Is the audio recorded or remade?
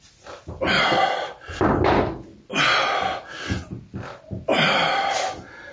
recorded